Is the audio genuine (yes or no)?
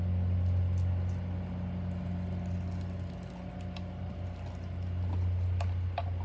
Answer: yes